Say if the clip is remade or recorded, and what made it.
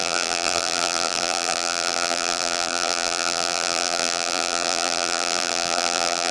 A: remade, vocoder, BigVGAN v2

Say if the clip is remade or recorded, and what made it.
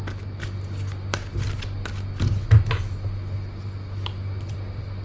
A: recorded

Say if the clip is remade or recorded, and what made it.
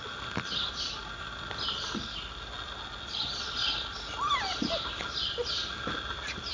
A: recorded